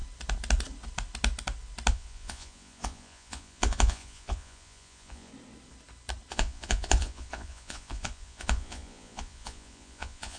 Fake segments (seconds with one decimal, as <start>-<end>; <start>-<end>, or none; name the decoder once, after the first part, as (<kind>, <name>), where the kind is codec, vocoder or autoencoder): 1.9-5.3 (vocoder, Vocos); 6.3-10.4